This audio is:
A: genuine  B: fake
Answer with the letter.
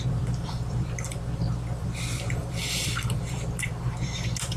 B